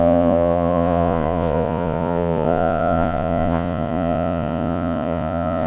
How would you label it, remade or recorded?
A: remade